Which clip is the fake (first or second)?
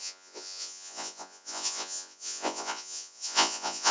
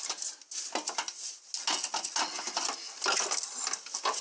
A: first